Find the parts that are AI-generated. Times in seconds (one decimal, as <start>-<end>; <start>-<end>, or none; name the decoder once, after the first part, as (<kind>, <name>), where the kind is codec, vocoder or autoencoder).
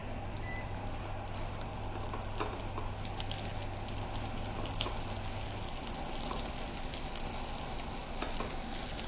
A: none